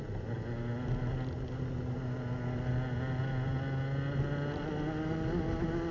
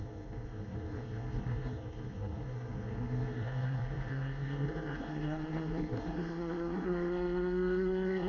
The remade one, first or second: second